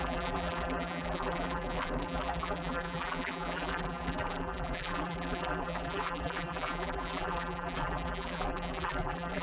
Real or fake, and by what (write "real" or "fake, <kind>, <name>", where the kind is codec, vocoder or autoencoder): fake, vocoder, BigVGAN v2